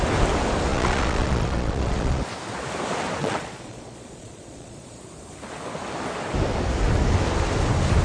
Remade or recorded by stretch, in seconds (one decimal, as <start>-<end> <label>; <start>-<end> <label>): 0.0-0.7 recorded; 0.7-2.2 remade; 2.2-3.2 recorded; 3.2-5.0 remade; 5.0-8.0 recorded